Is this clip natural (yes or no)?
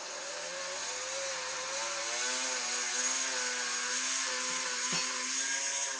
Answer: yes